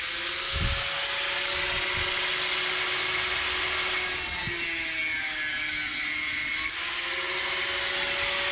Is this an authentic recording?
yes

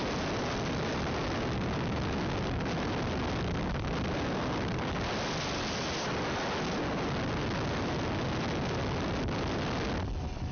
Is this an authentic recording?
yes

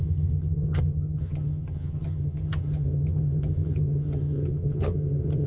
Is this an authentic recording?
no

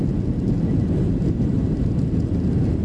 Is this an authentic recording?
yes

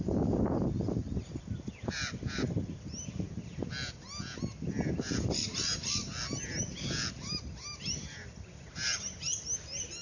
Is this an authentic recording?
yes